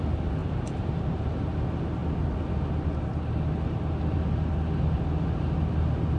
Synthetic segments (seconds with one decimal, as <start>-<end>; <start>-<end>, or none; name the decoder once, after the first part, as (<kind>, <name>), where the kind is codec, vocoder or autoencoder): 0.4-1.2 (vocoder, BigVGAN v2)